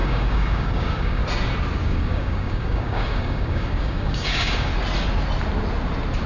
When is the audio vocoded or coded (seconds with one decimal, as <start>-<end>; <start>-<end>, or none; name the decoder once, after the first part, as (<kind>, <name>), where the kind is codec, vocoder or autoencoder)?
0.0-1.2 (codec, DAC); 1.8-4.7